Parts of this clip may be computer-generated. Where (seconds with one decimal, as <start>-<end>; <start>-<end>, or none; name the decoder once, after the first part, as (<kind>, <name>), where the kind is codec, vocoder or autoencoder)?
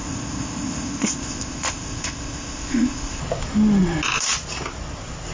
0.0-3.2 (codec, ZipCodec)